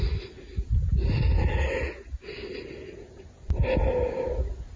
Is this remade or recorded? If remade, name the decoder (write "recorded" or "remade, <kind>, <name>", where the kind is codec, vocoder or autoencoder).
recorded